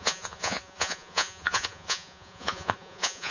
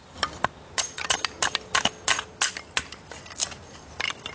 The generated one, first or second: first